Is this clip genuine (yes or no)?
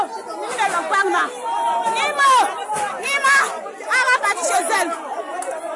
yes